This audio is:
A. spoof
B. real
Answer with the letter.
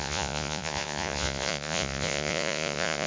A